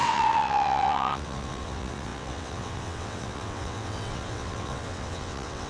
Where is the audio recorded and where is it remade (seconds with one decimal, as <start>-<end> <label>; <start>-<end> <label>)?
0.0-5.7 remade